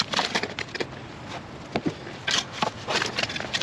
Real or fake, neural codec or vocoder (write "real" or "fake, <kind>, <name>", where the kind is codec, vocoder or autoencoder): real